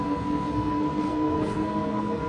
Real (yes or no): no